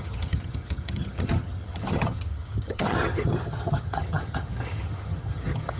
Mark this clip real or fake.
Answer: fake